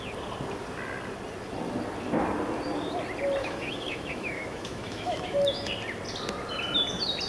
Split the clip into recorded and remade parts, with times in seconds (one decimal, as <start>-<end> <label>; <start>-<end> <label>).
0.0-3.4 recorded; 3.4-5.7 remade; 5.7-7.3 recorded